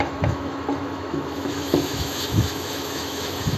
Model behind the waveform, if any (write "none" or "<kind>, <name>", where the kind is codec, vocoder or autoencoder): autoencoder, DAC-VAE